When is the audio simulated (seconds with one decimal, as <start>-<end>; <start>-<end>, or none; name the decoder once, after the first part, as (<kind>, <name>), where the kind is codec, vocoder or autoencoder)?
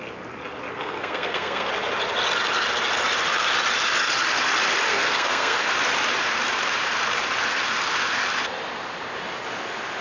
0.7-1.7 (codec, SNAC); 4.9-5.7